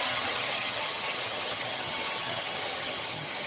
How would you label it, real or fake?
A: fake